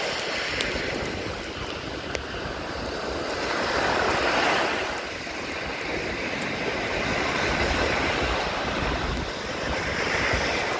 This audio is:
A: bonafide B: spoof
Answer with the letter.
A